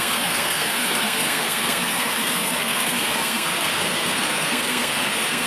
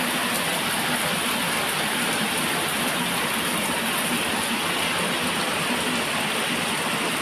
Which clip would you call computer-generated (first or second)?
first